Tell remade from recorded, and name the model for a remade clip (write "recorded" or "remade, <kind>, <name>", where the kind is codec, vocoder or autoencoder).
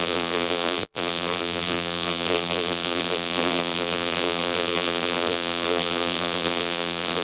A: remade, vocoder, BigVGAN v2